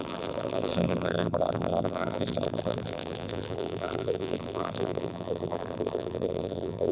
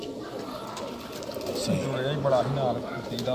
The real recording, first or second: second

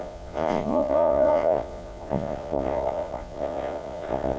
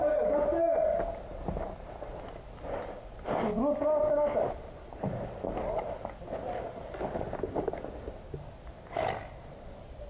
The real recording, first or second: second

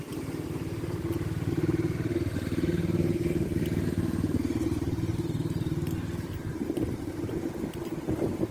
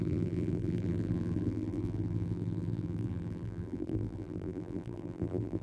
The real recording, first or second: first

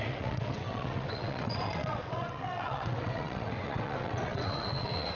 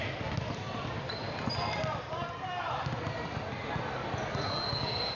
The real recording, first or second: second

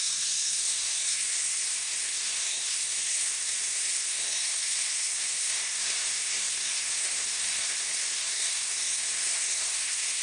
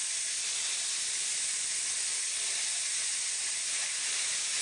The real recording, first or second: second